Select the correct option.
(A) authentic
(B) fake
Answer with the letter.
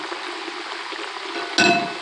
A